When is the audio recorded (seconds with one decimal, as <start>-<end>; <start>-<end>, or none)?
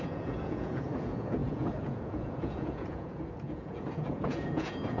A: none